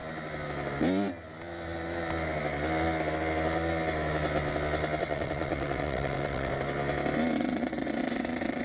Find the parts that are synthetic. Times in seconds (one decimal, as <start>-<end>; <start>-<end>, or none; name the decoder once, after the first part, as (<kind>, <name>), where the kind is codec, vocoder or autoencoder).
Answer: 5.0-6.5 (vocoder, WaveNeXt); 7.4-8.6